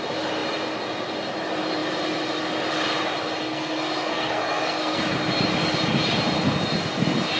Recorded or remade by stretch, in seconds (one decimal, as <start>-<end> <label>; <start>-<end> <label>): 0.0-3.4 recorded; 3.4-5.0 remade; 5.0-7.4 recorded